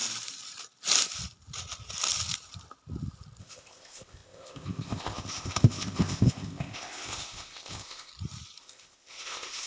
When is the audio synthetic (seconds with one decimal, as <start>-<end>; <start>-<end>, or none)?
3.4-8.1; 8.6-9.7